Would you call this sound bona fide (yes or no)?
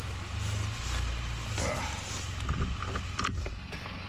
yes